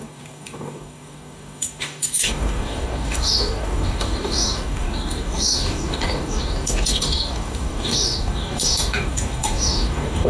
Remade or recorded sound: remade